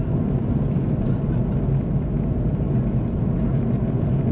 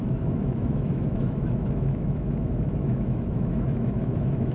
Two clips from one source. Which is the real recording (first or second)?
first